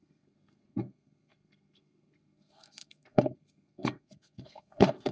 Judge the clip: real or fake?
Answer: fake